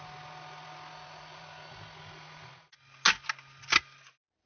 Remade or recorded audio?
recorded